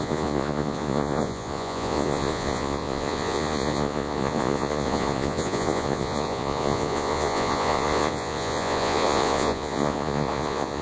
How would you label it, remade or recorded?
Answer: remade